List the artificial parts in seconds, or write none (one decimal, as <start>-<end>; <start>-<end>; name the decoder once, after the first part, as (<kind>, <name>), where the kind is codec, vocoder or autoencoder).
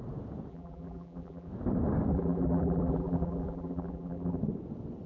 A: 0.5-1.5 (vocoder, BigVGAN v2); 2.1-4.4